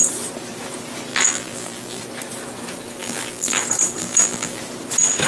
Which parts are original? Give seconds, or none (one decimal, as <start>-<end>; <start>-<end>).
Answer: 0.0-1.1; 2.0-3.0; 3.6-4.0; 4.6-5.3